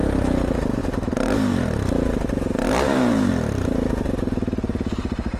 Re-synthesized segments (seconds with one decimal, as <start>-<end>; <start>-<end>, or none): 0.8-3.3